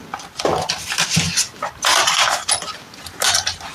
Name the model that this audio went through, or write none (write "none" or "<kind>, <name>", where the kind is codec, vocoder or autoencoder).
none